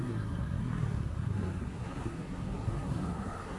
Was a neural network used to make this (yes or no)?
yes